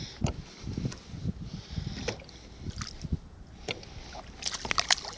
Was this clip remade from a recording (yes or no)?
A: no